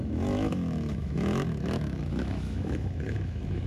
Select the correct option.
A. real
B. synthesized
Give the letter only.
B